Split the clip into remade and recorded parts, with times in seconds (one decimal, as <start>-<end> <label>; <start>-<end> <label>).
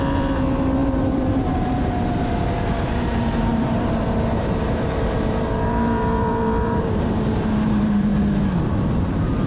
0.0-8.1 remade; 8.1-8.7 recorded; 8.7-9.5 remade